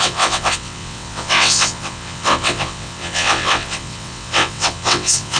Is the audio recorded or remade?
remade